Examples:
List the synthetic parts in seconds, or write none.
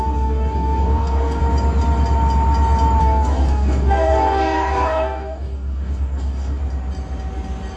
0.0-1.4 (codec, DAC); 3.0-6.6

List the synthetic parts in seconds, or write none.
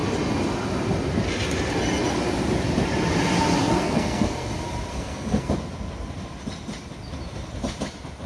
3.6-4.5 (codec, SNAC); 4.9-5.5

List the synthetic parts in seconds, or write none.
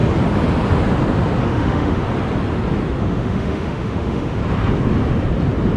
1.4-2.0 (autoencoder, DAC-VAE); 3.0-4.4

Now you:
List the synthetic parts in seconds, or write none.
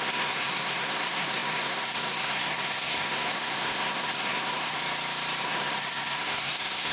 0.0-4.8 (codec, SNAC); 5.4-6.9